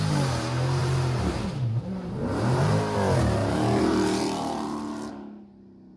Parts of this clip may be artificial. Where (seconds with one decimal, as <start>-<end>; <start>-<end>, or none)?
0.8-2.7; 3.4-5.1